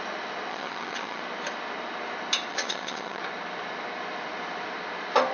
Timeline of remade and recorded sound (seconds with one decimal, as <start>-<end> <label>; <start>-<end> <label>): 0.0-0.5 recorded; 0.5-1.2 remade; 1.2-2.5 recorded; 2.5-3.2 remade; 3.2-5.3 recorded